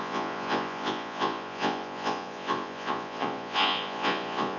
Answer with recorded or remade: remade